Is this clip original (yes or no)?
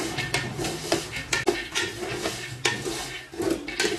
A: yes